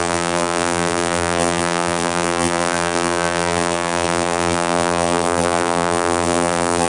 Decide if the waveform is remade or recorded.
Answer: remade